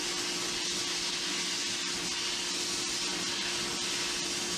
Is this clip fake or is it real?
real